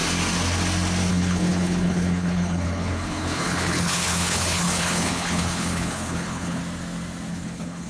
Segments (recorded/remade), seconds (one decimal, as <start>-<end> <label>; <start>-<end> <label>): 0.0-1.1 recorded; 1.1-6.6 remade; 6.6-7.3 recorded; 7.3-7.9 remade